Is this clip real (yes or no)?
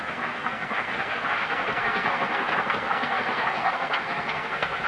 no